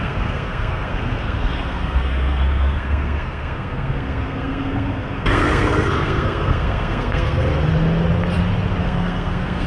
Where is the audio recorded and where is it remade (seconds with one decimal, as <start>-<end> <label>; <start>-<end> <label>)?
0.0-7.5 remade; 7.5-8.8 recorded; 8.8-9.7 remade